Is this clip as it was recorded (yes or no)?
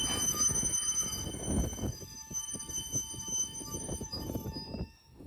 no